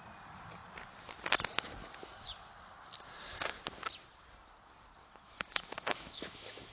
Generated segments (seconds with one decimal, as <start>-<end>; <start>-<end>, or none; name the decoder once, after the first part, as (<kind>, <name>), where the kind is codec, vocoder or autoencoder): 5.0-6.7 (autoencoder, DAC-VAE)